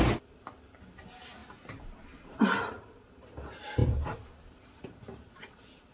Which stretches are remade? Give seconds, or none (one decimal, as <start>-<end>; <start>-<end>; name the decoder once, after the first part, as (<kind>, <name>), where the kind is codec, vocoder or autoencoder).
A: 1.4-3.3 (vocoder, BigVGAN v2); 3.8-5.0